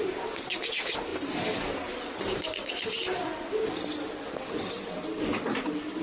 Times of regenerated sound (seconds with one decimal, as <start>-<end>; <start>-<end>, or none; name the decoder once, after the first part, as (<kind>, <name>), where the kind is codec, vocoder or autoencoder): none